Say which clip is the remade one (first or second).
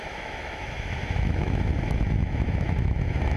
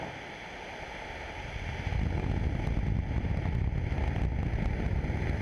first